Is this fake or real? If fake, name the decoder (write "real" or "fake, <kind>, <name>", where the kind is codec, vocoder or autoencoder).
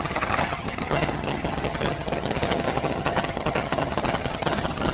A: fake, vocoder, HiFi-GAN